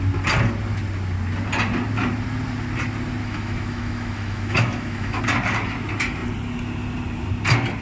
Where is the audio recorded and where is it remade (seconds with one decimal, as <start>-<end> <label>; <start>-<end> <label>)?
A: 0.0-3.2 recorded; 3.2-5.2 remade; 5.2-7.8 recorded